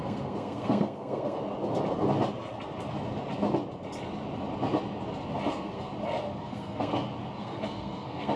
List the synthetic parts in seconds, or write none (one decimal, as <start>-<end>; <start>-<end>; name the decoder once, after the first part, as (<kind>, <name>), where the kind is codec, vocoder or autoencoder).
0.0-1.4 (codec, SNAC); 5.5-5.9; 6.4-6.9; 7.4-8.4